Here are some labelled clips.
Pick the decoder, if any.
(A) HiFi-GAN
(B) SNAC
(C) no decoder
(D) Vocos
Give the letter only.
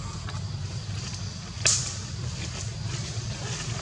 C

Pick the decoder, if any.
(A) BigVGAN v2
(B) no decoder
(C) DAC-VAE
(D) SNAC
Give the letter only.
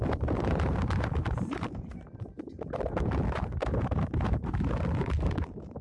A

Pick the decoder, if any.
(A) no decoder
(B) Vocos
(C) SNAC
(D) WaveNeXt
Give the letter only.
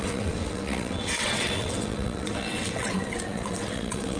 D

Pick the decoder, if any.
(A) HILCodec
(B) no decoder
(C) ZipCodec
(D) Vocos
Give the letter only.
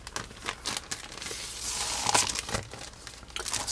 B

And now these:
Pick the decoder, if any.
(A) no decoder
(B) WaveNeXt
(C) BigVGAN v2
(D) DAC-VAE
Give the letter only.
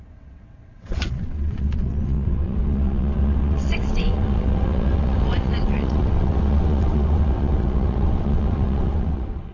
B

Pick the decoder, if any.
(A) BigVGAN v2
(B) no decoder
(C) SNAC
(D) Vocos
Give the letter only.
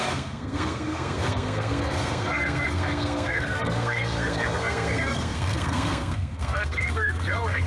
C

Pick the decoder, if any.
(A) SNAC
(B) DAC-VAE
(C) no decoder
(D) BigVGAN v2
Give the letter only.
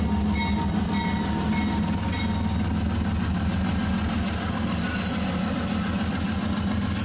C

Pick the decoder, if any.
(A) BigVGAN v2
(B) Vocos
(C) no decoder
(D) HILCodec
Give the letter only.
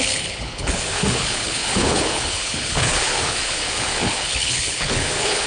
D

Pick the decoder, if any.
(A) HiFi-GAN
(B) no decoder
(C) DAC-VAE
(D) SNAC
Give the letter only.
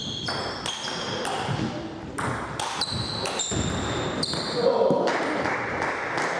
B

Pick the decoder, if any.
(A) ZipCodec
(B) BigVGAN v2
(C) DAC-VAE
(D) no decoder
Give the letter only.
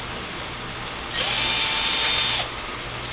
D